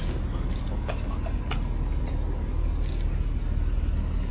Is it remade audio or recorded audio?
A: recorded